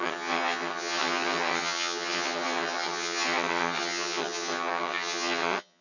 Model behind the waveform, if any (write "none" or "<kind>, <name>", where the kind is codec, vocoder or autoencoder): vocoder, HiFi-GAN